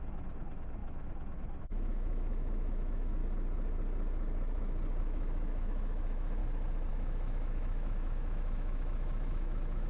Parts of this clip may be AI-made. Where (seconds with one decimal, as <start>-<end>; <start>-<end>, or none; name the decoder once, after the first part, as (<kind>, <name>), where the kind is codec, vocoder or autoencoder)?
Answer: 0.0-3.2 (autoencoder, DAC-VAE); 5.0-6.4; 6.9-9.9

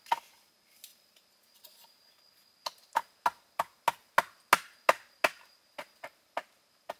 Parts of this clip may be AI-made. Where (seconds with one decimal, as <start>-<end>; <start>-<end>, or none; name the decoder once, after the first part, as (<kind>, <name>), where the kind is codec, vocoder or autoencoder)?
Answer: none